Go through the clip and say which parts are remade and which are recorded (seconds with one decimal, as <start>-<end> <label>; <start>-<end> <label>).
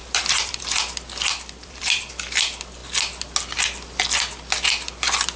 0.0-0.6 remade; 0.6-1.3 recorded; 1.3-2.1 remade; 2.1-5.4 recorded